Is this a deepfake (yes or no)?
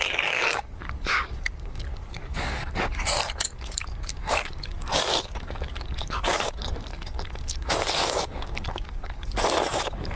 yes